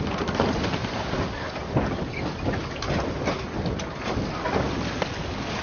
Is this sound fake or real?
real